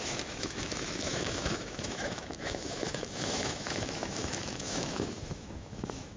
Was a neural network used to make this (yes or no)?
yes